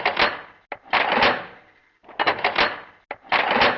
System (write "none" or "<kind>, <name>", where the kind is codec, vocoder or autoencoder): none